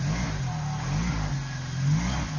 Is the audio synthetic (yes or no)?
no